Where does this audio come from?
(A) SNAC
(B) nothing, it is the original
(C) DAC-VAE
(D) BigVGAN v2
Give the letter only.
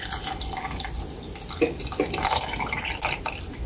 B